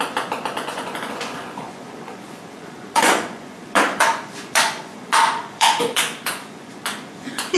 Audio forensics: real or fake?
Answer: fake